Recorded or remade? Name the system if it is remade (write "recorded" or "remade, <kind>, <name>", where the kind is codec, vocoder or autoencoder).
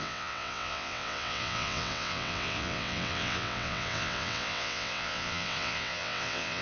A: remade, vocoder, WaveNeXt